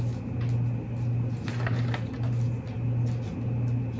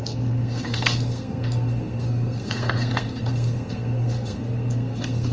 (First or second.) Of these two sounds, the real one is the first